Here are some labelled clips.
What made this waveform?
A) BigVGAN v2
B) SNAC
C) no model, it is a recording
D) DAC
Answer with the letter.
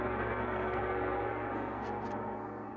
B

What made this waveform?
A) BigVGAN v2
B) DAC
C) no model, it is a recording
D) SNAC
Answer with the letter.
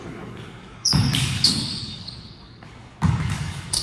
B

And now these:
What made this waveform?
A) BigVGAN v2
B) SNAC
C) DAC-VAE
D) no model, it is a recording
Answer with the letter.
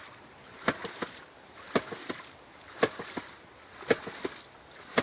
D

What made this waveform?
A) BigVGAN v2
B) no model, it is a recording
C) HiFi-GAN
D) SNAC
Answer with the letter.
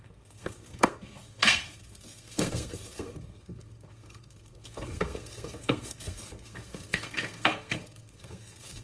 D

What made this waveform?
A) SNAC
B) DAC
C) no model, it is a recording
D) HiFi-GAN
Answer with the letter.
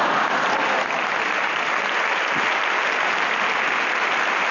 C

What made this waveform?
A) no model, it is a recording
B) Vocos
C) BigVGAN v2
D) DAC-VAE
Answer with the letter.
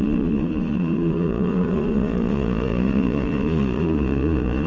B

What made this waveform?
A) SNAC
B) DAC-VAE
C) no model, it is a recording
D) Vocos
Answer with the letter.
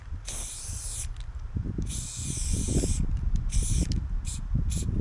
C